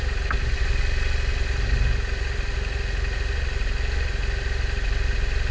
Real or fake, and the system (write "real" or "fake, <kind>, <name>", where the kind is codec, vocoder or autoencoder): real